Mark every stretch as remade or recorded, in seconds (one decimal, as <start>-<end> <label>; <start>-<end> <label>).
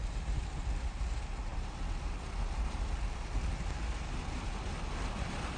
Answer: 0.0-5.6 recorded